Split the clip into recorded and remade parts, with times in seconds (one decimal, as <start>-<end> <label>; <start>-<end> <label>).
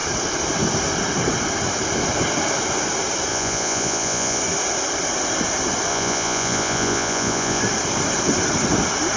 0.0-3.3 recorded; 3.3-4.4 remade; 4.4-5.9 recorded; 5.9-7.6 remade; 7.6-9.2 recorded